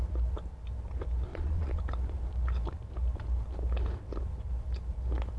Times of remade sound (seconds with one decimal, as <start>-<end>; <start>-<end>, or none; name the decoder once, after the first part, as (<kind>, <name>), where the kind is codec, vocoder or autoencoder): 1.3-1.8 (vocoder, Vocos)